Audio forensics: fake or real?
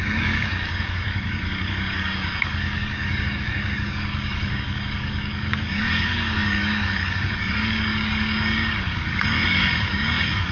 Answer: fake